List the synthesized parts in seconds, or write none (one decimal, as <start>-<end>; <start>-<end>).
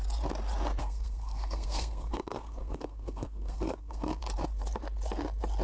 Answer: 0.8-4.2